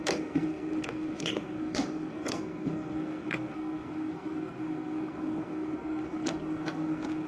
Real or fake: fake